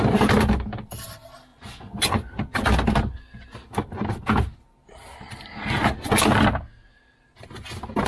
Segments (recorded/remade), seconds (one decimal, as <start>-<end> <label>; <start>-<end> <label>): 0.0-1.5 recorded; 1.5-2.3 remade; 2.3-8.1 recorded